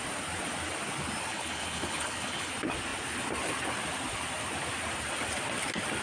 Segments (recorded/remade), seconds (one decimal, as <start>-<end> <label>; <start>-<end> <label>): 0.0-1.3 recorded; 1.3-2.5 remade; 2.5-6.0 recorded